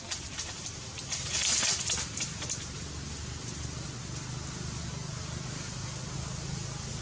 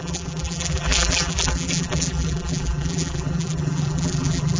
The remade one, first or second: second